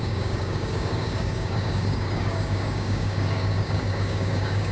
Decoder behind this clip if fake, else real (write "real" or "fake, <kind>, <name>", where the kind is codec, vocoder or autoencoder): fake, codec, DAC